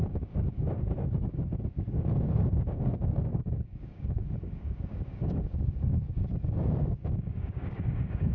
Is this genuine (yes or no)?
no